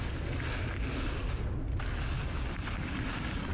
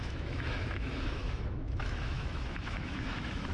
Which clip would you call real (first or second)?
first